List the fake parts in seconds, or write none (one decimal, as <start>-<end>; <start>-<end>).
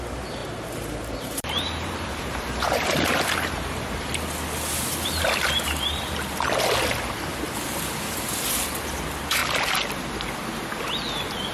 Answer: 0.4-4.1